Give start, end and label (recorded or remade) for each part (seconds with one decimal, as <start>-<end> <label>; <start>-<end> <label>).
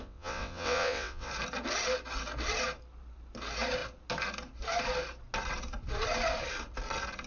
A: 0.0-1.3 remade; 1.3-7.3 recorded